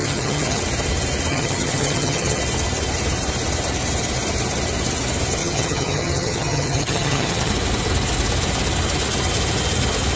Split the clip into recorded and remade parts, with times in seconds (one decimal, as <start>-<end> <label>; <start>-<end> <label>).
0.0-0.6 remade; 0.6-1.3 recorded; 1.3-2.4 remade; 2.4-5.4 recorded; 5.4-7.5 remade; 7.5-10.2 recorded